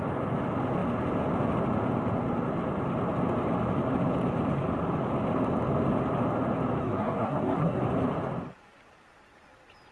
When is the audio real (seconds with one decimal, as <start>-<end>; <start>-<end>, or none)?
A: 0.0-6.8; 7.8-9.9